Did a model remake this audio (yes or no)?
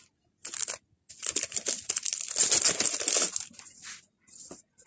no